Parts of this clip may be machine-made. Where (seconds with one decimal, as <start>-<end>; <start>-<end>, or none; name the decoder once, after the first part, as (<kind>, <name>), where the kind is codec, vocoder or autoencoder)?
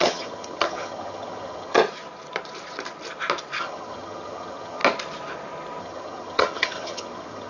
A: 0.0-1.8 (vocoder, HiFi-GAN); 3.6-4.8; 5.8-7.5